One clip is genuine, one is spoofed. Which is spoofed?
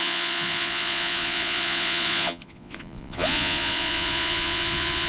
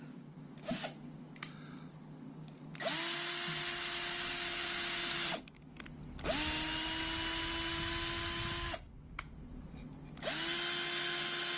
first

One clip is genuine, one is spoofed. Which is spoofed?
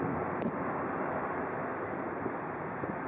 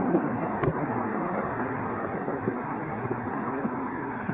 second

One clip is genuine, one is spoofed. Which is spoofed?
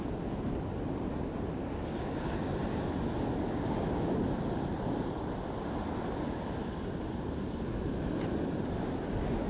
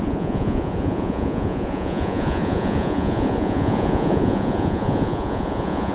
second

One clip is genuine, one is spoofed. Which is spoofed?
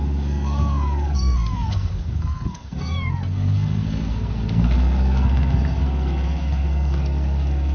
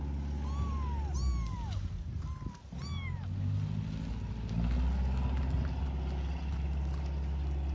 first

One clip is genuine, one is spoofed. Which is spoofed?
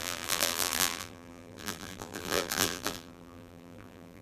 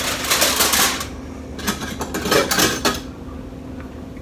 first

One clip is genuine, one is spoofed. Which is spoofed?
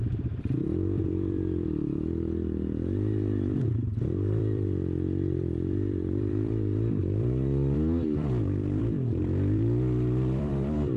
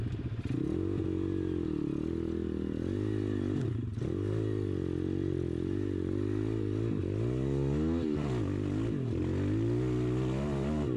first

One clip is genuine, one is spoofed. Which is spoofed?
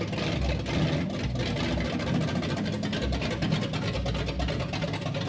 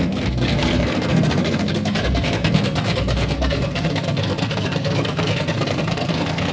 second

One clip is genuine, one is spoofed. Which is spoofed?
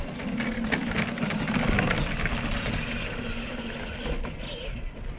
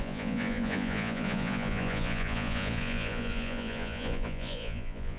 second